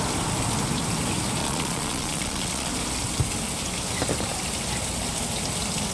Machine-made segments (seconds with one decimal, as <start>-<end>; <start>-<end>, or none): 1.4-2.7